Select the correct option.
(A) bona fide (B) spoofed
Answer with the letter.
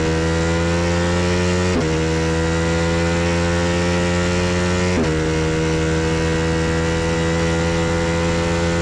A